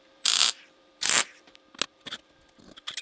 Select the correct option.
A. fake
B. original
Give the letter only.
B